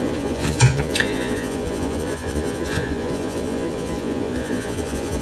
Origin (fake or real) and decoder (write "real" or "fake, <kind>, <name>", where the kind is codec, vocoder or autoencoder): fake, vocoder, Vocos